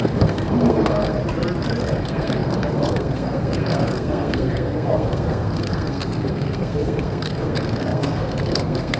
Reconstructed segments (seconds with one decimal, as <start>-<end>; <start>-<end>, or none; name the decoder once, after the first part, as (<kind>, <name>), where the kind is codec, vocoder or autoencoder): 0.0-1.2 (codec, SNAC); 1.8-9.0